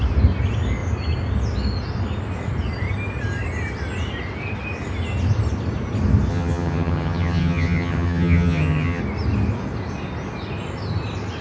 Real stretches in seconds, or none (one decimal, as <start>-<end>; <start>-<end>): 0.0-6.3; 9.0-11.4